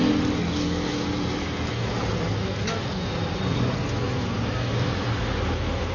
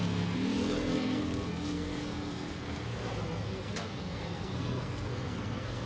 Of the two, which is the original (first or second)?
first